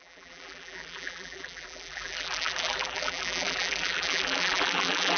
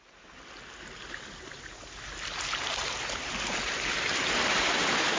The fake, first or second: first